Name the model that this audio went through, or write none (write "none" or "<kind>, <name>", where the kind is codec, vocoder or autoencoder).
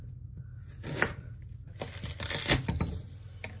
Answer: none